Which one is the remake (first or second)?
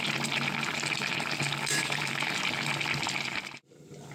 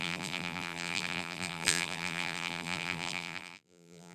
second